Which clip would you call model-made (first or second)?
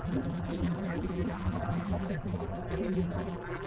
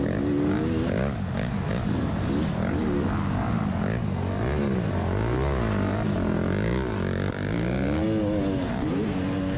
first